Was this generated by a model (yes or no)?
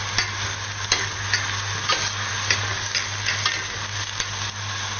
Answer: no